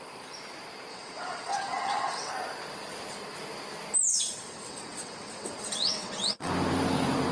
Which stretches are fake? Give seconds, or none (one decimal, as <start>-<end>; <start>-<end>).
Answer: 0.9-2.3; 4.1-6.5